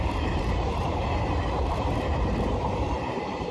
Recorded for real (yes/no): no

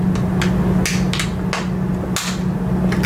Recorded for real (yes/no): yes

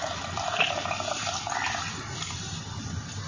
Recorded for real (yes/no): yes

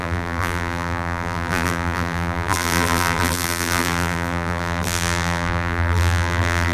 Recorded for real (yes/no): no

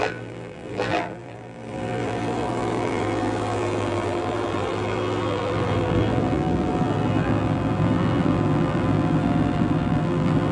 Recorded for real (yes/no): no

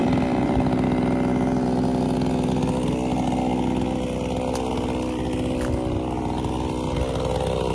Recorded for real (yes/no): yes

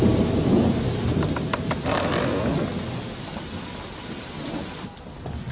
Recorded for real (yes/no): yes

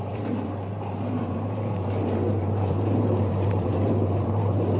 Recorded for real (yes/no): no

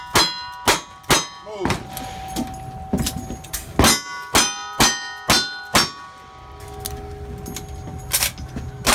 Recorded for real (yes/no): yes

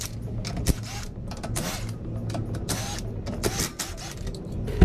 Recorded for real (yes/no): yes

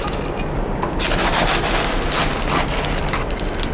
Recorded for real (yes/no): yes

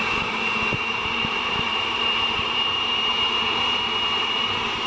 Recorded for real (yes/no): no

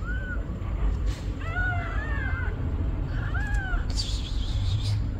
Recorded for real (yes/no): no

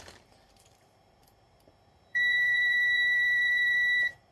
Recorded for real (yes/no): no